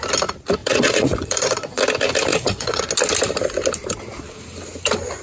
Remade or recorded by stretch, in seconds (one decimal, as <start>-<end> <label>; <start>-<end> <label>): 0.0-0.6 recorded; 0.6-1.8 remade; 1.8-2.3 recorded; 2.3-2.8 remade; 2.8-5.2 recorded